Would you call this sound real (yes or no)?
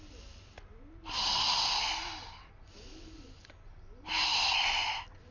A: yes